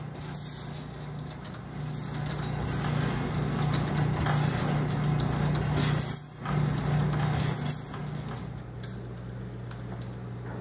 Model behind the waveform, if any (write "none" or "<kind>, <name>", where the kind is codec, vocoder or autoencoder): none